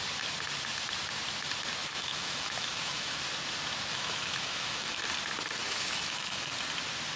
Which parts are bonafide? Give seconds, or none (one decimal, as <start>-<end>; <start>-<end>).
0.0-1.8; 3.2-3.9; 5.0-5.6; 6.5-7.2